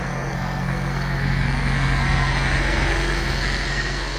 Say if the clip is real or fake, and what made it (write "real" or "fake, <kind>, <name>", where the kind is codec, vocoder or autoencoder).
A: fake, codec, SNAC